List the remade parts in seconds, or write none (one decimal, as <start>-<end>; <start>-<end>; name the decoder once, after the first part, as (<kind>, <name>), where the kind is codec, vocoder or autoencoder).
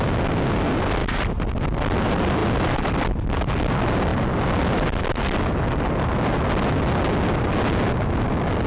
1.0-1.5 (vocoder, BigVGAN v2)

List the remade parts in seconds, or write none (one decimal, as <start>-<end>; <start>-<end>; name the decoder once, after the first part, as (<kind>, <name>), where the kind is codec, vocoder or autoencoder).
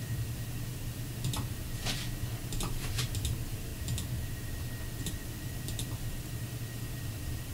0.0-3.7 (vocoder, BigVGAN v2); 5.0-7.5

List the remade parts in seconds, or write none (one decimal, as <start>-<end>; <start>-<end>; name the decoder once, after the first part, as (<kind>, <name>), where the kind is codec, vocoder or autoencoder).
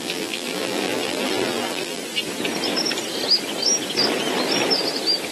0.0-2.0 (vocoder, BigVGAN v2)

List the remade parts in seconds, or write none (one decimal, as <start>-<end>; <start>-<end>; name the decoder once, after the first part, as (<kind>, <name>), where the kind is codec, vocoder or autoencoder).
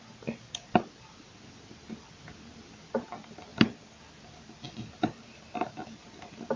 3.5-4.0 (vocoder, BigVGAN v2)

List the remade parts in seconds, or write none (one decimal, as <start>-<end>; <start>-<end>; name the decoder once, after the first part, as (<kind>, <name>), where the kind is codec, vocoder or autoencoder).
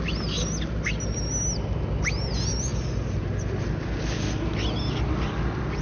none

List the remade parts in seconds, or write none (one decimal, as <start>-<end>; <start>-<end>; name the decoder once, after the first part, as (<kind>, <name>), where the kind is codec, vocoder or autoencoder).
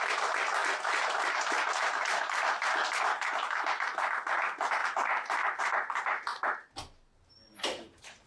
0.6-2.2 (vocoder, BigVGAN v2); 4.8-5.6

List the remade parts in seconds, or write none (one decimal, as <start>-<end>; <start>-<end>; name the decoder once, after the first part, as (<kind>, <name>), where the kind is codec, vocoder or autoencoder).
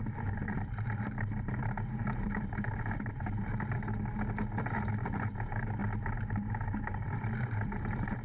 0.0-3.4 (vocoder, BigVGAN v2); 4.9-8.2